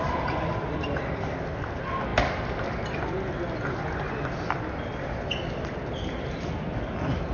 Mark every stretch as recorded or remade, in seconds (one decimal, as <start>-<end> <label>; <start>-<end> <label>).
0.0-7.3 recorded